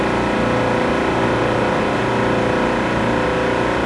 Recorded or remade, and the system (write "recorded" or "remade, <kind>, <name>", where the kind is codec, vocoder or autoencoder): recorded